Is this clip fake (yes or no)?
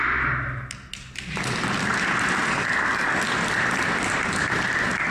no